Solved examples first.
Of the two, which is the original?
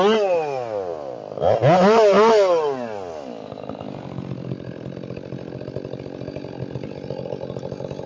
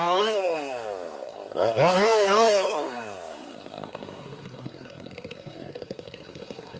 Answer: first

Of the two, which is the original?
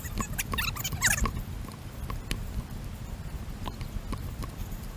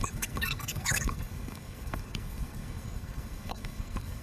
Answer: first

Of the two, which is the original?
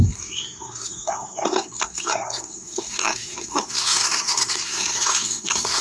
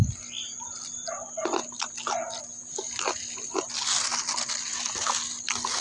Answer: second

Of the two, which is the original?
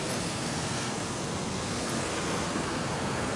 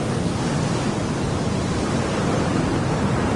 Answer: second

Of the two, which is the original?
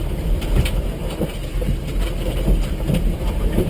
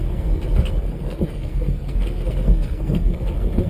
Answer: first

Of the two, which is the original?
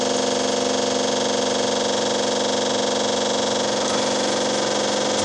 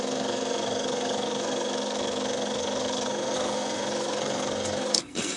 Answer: first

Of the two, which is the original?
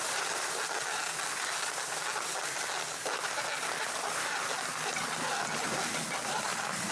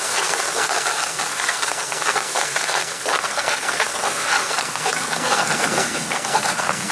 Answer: first